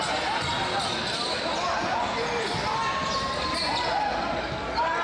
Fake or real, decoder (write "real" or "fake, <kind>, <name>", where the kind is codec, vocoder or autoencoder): real